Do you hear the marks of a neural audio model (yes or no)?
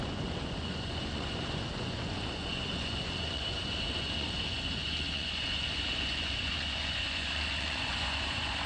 yes